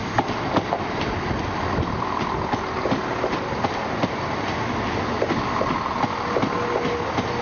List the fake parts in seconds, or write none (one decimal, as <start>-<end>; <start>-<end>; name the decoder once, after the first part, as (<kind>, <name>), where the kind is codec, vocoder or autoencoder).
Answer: none